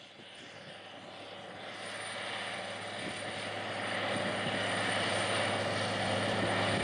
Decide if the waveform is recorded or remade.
recorded